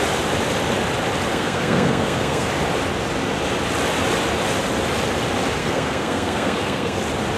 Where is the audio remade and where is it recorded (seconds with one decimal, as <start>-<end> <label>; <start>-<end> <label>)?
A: 0.0-1.3 recorded; 1.3-2.5 remade; 2.5-5.6 recorded; 5.6-7.0 remade; 7.0-7.4 recorded